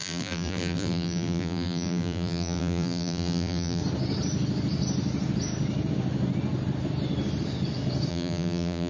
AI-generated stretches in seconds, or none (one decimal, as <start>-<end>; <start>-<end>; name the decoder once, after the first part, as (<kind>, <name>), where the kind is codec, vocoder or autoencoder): 0.0-3.8 (vocoder, BigVGAN v2); 8.1-8.9